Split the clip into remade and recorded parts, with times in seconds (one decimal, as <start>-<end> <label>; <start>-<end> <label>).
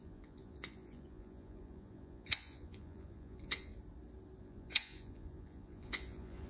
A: 0.0-3.7 remade; 3.7-4.4 recorded; 4.4-6.5 remade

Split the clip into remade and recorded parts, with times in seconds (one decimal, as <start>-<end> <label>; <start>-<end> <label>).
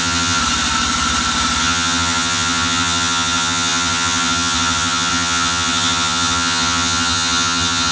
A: 0.0-0.4 remade; 0.4-1.6 recorded; 1.6-7.9 remade